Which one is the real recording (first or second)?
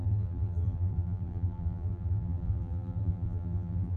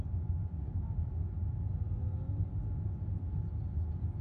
second